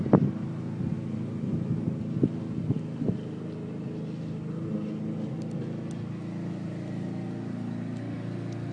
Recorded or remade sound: recorded